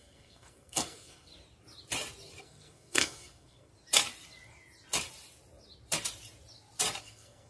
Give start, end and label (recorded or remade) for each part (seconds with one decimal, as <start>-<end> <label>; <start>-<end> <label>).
0.0-1.3 remade; 1.3-2.4 recorded; 2.4-3.7 remade; 3.7-7.0 recorded; 7.0-7.5 remade